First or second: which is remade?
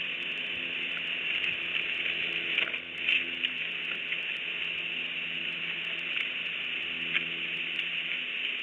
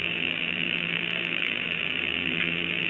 second